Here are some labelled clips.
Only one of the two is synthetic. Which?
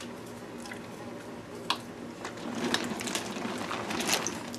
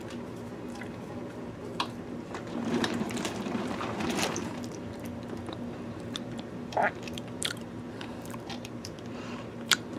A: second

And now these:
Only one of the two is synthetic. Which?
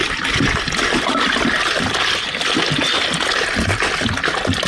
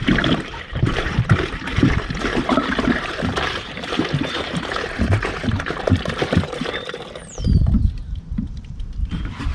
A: second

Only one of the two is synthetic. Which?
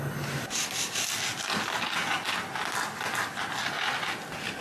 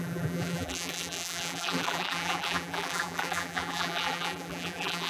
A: second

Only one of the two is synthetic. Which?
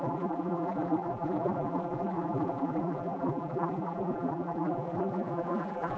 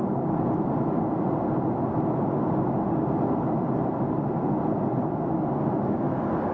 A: first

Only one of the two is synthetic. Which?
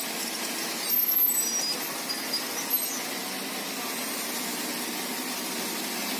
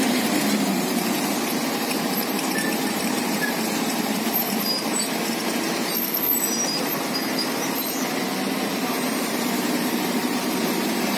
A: second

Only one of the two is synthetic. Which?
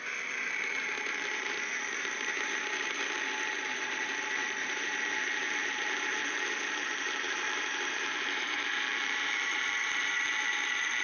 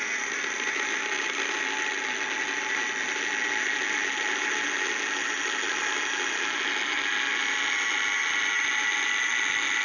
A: first